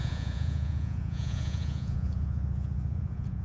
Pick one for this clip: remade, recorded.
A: remade